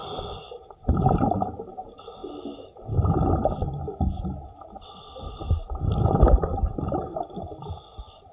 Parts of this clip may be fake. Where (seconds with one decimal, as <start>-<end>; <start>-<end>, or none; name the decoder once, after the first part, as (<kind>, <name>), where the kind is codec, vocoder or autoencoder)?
none